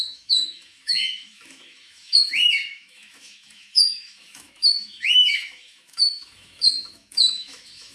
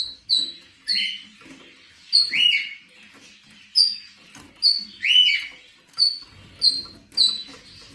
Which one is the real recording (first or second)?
second